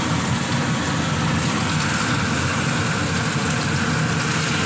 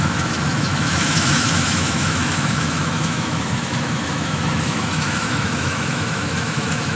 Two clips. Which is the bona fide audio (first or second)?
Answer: first